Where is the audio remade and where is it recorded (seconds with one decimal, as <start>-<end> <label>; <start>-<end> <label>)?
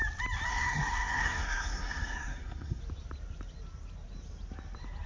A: 0.0-0.5 recorded; 0.5-2.8 remade; 2.8-5.1 recorded